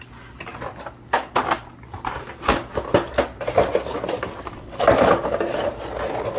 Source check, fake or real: fake